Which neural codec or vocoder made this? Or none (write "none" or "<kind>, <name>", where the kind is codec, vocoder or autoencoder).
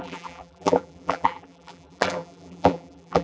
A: vocoder, BigVGAN v2